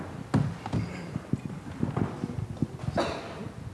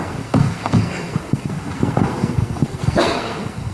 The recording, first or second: first